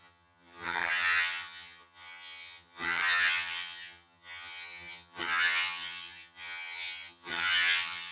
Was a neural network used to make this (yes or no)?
yes